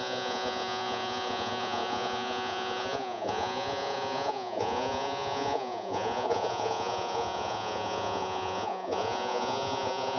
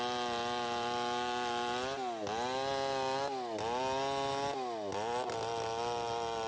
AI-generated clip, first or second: first